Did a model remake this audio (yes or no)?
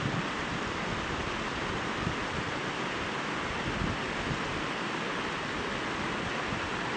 no